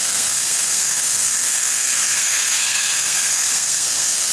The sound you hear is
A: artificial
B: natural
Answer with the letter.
A